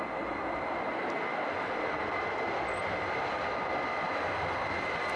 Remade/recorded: recorded